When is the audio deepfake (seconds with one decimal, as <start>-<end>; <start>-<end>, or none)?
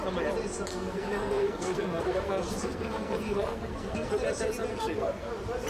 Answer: 0.7-4.1; 4.7-5.3